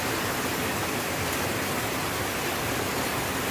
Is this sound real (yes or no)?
yes